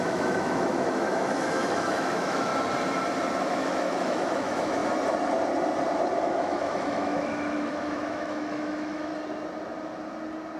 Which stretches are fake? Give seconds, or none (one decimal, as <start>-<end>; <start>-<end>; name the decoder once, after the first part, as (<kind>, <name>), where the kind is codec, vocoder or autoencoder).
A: 0.0-2.5 (autoencoder, DAC-VAE); 3.4-4.8; 6.2-9.1